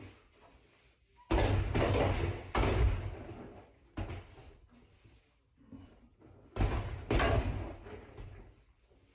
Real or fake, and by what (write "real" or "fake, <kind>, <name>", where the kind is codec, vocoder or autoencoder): real